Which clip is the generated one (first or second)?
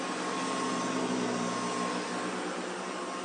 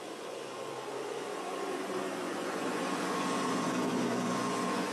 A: second